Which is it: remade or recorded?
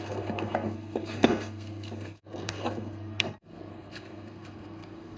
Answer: remade